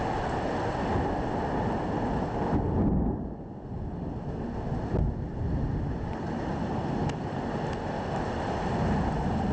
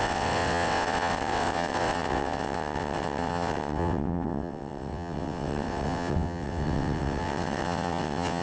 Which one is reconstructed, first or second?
second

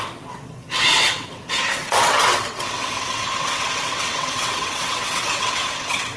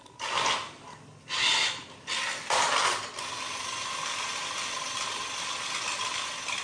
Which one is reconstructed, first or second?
first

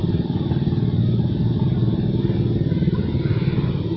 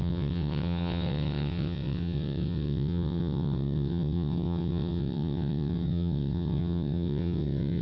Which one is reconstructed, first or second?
second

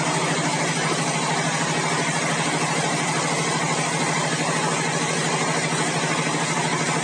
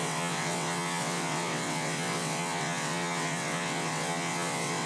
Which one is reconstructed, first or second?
second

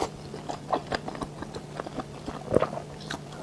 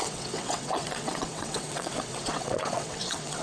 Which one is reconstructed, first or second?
second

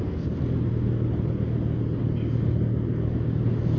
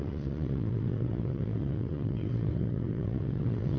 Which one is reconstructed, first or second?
second